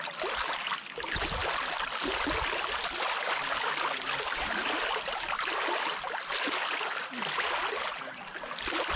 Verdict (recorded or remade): recorded